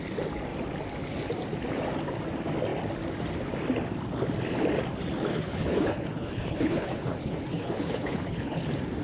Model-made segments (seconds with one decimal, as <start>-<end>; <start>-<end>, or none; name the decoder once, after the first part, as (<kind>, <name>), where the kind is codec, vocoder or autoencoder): 5.3-8.6 (codec, HILCodec)